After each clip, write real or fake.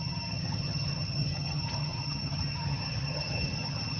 fake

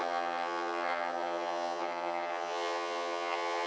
fake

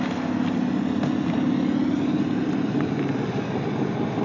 real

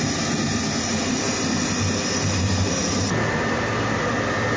real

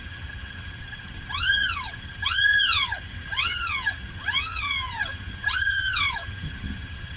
fake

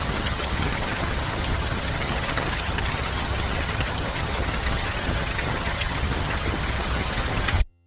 fake